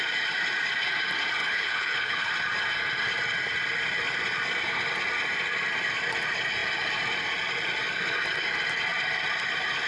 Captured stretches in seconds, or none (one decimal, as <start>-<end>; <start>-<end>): 0.0-1.4; 2.3-9.9